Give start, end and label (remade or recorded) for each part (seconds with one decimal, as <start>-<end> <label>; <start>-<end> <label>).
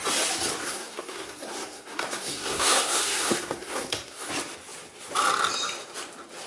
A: 0.0-0.6 recorded; 0.6-4.3 remade; 4.3-6.5 recorded